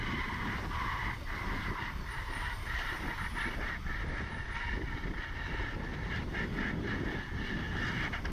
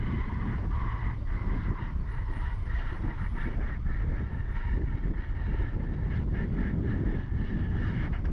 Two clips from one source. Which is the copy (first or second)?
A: first